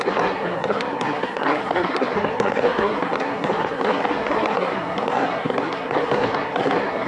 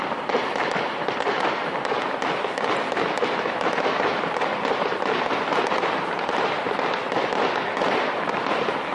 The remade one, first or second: first